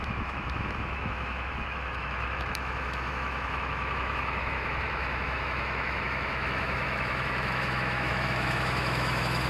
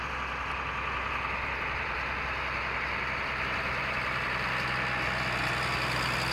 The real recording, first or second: second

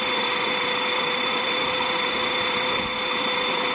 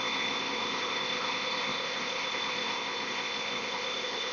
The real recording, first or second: first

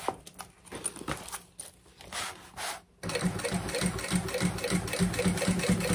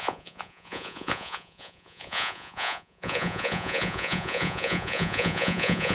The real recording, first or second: first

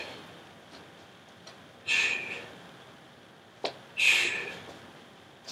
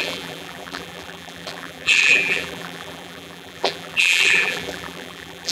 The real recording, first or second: first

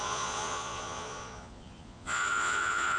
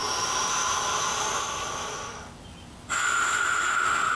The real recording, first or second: second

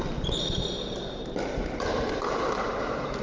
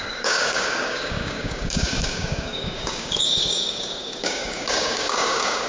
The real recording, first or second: first